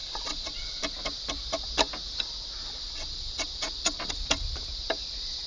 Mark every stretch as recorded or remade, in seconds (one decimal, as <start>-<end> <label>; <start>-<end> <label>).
0.0-0.8 remade; 0.8-2.6 recorded; 2.6-4.3 remade; 4.3-5.5 recorded